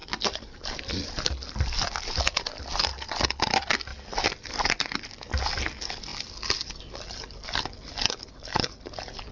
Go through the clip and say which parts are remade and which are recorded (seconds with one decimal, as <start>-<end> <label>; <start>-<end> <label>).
0.0-9.3 recorded